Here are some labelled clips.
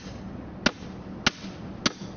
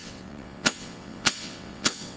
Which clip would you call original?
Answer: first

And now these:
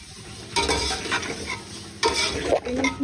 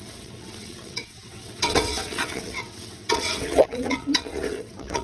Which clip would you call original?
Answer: first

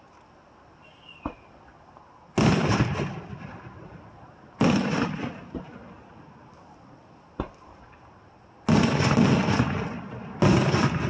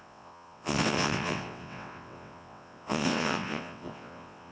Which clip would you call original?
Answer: first